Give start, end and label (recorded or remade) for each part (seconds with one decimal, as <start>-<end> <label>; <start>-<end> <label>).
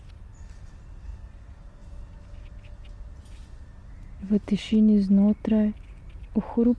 0.0-6.8 recorded